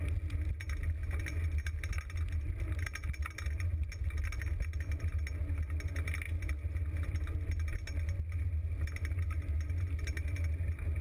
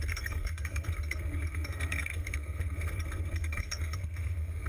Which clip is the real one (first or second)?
first